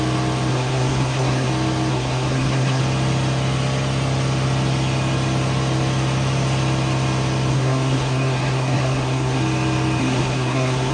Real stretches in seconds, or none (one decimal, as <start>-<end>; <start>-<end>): 0.0-0.5; 1.5-1.9; 2.8-7.5; 9.4-10.0